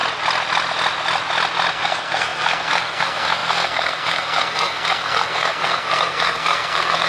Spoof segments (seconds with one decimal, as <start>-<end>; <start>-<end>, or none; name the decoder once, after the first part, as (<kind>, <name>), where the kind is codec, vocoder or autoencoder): 1.7-7.1 (codec, SNAC)